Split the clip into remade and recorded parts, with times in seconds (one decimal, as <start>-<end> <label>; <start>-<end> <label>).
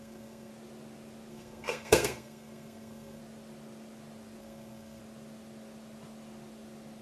0.0-0.5 remade; 0.5-1.3 recorded; 1.3-3.2 remade; 3.2-4.4 recorded; 4.4-5.0 remade; 5.0-7.0 recorded